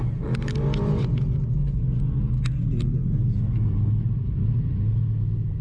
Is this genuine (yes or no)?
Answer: yes